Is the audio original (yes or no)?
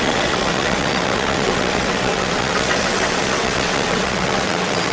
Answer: no